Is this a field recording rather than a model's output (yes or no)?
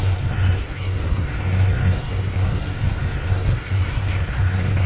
no